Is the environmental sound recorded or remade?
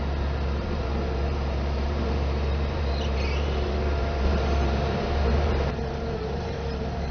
remade